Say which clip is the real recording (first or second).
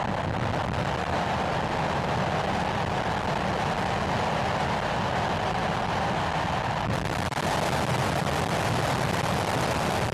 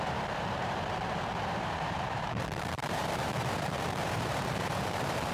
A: first